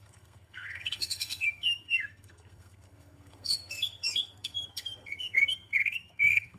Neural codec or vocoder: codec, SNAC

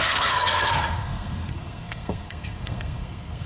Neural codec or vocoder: codec, SNAC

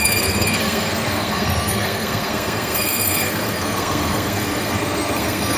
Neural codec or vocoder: codec, SNAC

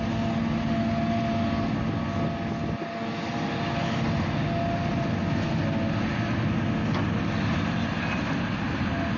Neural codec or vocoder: none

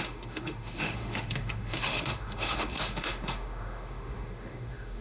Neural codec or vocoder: autoencoder, DAC-VAE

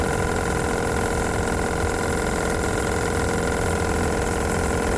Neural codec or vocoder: none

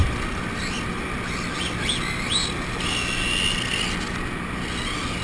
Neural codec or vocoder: none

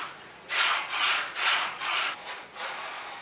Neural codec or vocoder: vocoder, Vocos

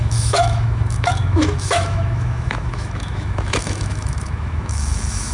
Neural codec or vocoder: autoencoder, DAC-VAE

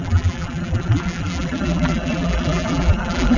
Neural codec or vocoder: vocoder, BigVGAN v2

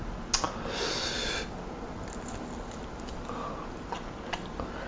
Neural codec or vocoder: none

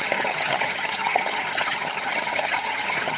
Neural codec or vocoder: vocoder, HiFi-GAN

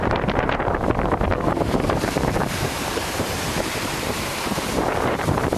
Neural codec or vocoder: vocoder, BigVGAN v2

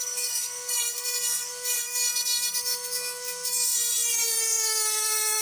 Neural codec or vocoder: codec, SNAC